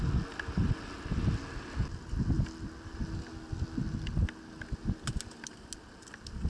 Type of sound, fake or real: real